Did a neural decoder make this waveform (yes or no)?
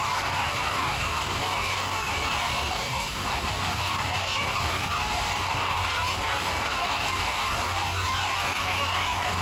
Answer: yes